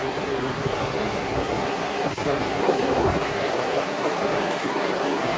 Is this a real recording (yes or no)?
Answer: no